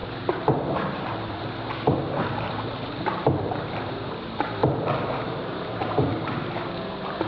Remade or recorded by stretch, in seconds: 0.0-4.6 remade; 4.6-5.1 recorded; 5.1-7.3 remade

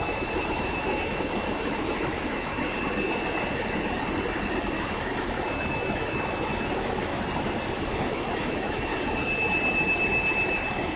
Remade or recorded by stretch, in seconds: 0.0-2.5 remade; 2.5-4.6 recorded; 4.6-7.1 remade; 7.1-7.9 recorded; 7.9-8.9 remade; 8.9-11.0 recorded

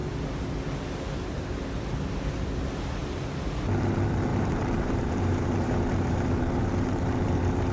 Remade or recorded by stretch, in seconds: 0.0-4.3 recorded; 4.3-7.7 remade

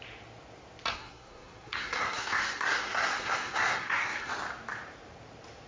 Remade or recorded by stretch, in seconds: 0.0-0.9 recorded; 0.9-4.3 remade; 4.3-5.7 recorded

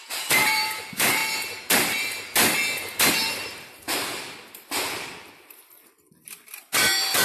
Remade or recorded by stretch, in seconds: 0.0-1.2 remade; 1.2-3.1 recorded; 3.1-7.2 remade

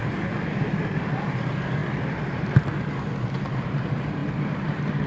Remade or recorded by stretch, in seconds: 0.0-1.8 recorded; 1.8-2.8 remade; 2.8-4.2 recorded; 4.2-5.1 remade

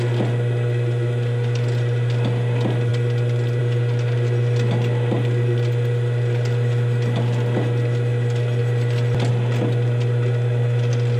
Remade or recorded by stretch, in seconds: 0.0-11.2 recorded